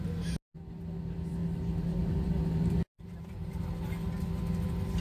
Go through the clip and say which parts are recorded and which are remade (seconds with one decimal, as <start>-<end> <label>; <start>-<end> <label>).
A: 0.0-1.4 recorded; 1.4-3.6 remade; 3.6-5.0 recorded